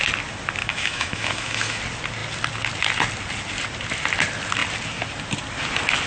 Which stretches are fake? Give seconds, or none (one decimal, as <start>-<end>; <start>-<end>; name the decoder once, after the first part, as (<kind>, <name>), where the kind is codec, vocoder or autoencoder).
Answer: 0.6-1.8 (autoencoder, DAC-VAE)